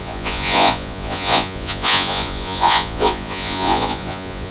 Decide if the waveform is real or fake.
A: fake